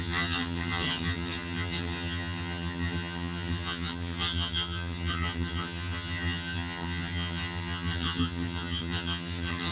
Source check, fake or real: fake